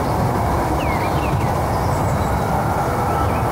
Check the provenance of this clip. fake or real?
real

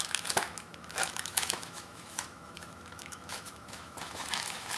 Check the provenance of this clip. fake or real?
fake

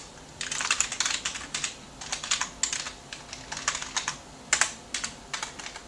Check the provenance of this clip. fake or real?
real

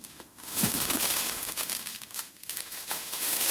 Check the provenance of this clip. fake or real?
fake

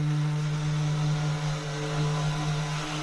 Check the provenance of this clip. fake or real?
real